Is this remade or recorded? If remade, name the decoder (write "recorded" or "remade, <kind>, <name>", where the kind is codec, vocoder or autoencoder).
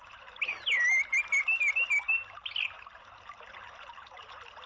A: recorded